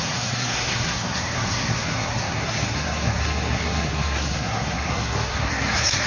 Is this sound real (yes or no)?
no